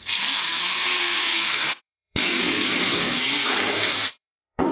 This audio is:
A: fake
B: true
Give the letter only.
A